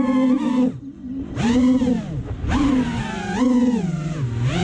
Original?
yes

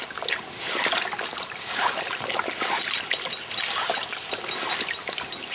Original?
yes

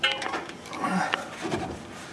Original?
no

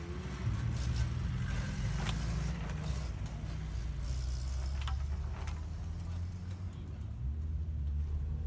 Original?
yes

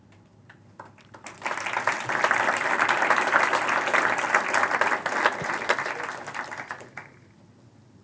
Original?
yes